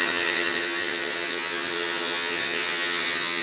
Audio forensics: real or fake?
fake